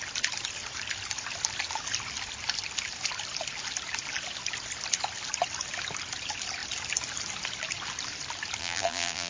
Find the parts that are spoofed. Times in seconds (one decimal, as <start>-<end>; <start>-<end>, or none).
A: 8.6-9.3